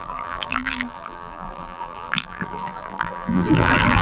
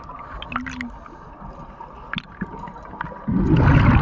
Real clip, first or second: second